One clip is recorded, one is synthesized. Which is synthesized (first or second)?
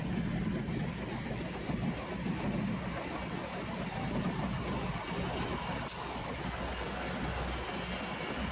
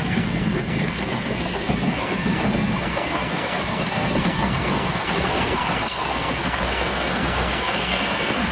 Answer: second